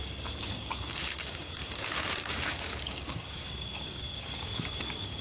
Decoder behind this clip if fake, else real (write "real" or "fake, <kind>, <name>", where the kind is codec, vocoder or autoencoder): fake, codec, DAC